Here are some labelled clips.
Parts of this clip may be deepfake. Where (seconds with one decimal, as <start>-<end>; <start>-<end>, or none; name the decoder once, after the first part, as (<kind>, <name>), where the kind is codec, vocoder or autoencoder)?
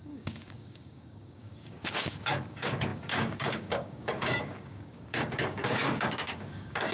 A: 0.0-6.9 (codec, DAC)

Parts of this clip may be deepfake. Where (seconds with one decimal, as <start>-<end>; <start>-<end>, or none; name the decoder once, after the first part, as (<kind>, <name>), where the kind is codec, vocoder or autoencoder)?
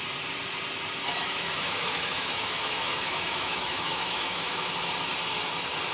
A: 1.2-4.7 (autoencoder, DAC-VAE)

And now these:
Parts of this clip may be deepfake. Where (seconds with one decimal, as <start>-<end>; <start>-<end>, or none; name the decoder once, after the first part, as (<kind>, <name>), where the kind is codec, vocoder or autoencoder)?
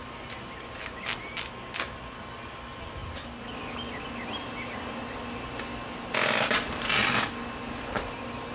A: none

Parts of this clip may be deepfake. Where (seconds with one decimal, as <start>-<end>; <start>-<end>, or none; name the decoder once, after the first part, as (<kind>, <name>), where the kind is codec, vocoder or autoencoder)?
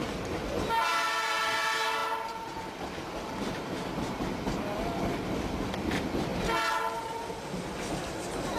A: none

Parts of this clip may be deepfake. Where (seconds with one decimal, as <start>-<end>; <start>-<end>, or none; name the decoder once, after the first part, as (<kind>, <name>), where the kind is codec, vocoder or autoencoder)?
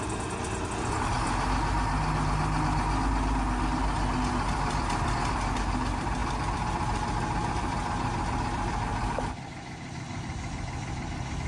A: none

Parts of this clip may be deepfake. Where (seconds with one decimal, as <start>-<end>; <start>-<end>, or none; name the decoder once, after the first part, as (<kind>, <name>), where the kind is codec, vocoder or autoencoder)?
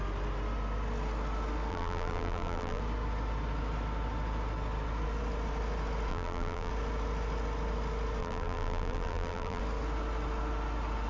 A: 1.7-2.8 (vocoder, BigVGAN v2); 6.1-6.7; 8.2-9.6